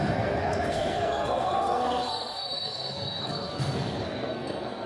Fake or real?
fake